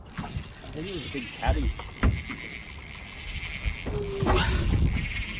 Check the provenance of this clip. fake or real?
real